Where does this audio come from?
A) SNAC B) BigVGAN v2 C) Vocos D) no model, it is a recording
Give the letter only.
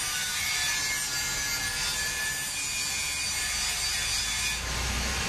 D